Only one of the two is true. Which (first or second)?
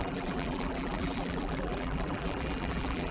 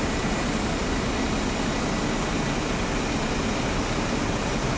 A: second